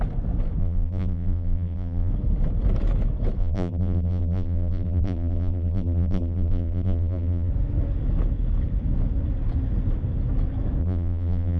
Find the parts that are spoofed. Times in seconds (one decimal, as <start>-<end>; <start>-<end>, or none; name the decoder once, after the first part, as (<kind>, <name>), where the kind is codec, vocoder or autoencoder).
0.6-2.1 (vocoder, BigVGAN v2); 3.4-7.5; 10.8-11.6